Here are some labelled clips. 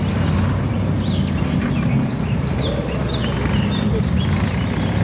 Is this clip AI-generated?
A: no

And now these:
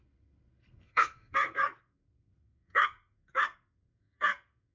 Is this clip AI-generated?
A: yes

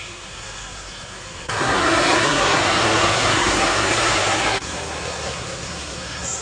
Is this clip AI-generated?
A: yes